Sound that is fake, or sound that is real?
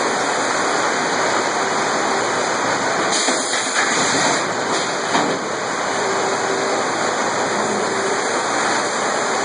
real